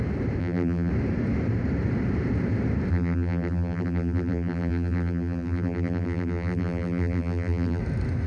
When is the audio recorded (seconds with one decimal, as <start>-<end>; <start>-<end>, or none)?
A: 0.0-0.4; 0.9-2.9; 7.8-8.3

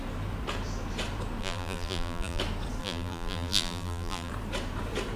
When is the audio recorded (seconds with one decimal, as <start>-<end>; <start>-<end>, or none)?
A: 0.0-1.4; 2.4-2.8; 4.3-5.2